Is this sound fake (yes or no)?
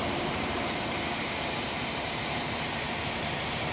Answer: yes